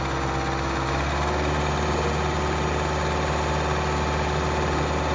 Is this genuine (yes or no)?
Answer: yes